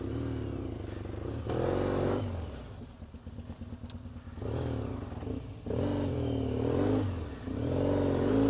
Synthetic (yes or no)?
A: no